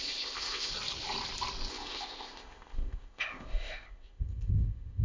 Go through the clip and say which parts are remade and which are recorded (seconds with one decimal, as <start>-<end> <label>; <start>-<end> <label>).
0.0-0.7 remade; 0.7-1.7 recorded; 1.7-5.0 remade